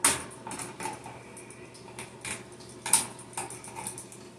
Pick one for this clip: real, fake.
real